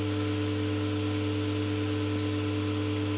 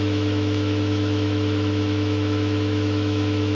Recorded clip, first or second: first